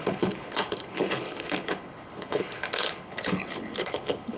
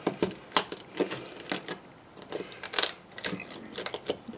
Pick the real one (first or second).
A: second